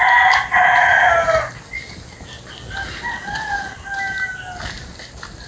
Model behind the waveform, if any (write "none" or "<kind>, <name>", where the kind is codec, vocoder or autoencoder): none